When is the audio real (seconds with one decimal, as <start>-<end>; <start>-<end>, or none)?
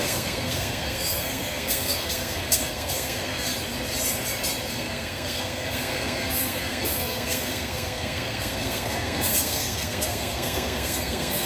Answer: 3.5-4.7